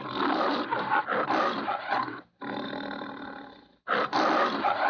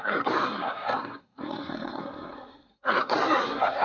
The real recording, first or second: first